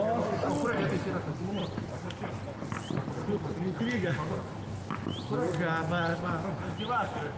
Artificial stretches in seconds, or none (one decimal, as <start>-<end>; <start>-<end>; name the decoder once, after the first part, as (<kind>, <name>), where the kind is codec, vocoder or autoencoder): 4.2-5.5 (autoencoder, DAC-VAE); 6.1-6.8